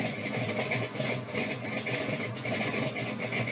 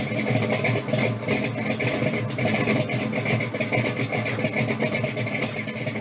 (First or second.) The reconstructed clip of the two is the first